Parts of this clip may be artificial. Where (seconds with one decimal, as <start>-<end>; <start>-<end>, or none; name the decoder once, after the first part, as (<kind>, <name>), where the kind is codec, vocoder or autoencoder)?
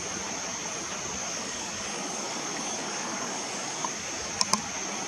1.2-4.3 (codec, DAC)